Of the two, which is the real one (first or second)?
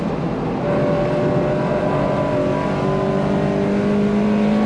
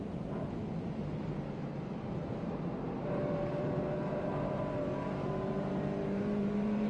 first